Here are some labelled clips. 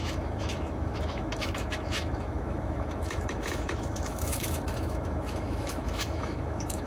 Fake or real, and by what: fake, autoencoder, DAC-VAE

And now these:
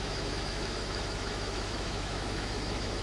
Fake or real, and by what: fake, autoencoder, DAC-VAE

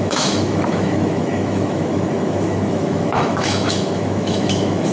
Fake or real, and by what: fake, autoencoder, DAC-VAE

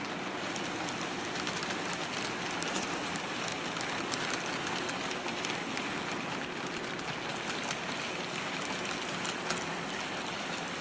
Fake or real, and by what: real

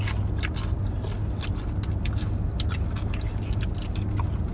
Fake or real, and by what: real